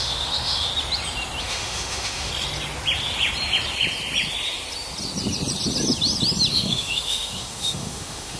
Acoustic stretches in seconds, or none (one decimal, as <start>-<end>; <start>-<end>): 0.7-1.4; 2.3-6.5